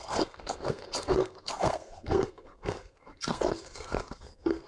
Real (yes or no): no